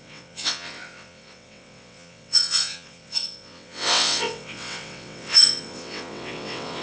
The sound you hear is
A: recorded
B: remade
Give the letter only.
B